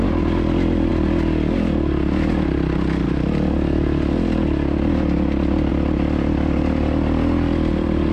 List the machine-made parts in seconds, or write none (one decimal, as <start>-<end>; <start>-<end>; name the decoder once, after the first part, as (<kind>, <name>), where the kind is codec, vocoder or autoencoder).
none